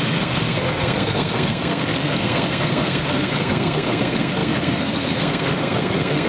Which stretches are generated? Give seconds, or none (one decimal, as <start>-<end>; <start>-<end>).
0.0-6.3